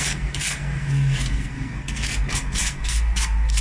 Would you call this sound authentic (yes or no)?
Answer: no